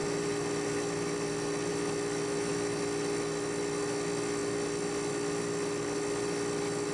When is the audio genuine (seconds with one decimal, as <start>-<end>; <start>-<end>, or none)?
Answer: 0.0-6.9